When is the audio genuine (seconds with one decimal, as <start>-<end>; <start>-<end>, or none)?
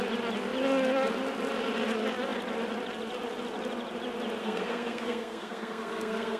0.0-4.4